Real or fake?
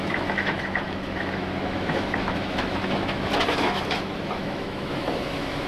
fake